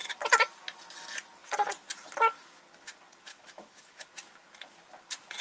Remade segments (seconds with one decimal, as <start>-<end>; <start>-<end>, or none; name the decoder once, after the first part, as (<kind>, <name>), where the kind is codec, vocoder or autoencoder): 3.3-4.1 (autoencoder, DAC-VAE)